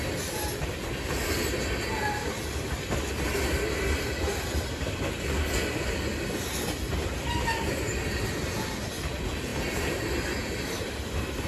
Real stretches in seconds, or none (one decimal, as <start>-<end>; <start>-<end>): 0.0-11.5